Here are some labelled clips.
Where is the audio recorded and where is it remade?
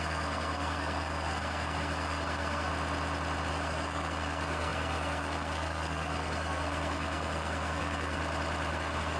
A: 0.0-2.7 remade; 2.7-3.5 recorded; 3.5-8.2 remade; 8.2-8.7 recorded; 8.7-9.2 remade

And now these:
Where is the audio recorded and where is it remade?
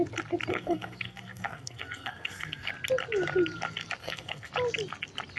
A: 0.0-0.5 recorded; 0.5-2.7 remade; 2.7-4.0 recorded; 4.0-4.5 remade; 4.5-5.4 recorded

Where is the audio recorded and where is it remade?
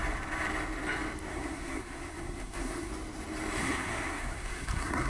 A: 0.0-1.3 recorded; 1.3-2.9 remade; 2.9-3.6 recorded; 3.6-5.1 remade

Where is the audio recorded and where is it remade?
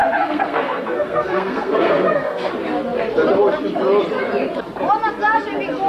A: 0.0-2.5 remade; 2.5-5.9 recorded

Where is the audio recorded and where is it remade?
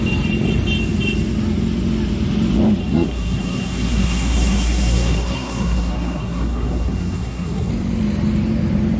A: 0.0-2.8 recorded; 2.8-7.7 remade; 7.7-9.0 recorded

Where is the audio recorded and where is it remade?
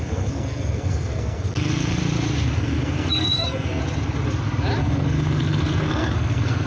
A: 0.0-2.0 remade; 2.0-2.6 recorded; 2.6-3.8 remade; 3.8-4.8 recorded; 4.8-6.7 remade